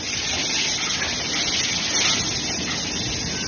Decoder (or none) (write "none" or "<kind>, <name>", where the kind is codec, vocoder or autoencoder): none